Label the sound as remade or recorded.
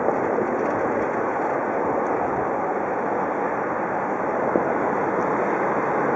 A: recorded